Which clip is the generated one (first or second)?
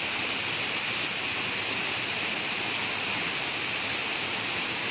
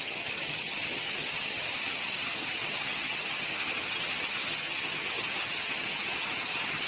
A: second